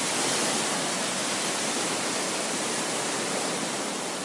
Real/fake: real